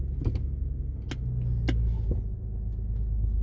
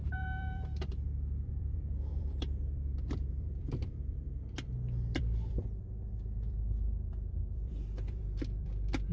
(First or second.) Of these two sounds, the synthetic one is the second